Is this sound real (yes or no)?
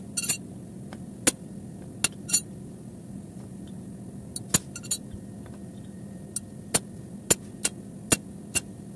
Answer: yes